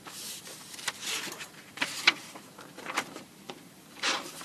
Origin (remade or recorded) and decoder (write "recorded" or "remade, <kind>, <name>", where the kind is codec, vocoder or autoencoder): remade, vocoder, BigVGAN v2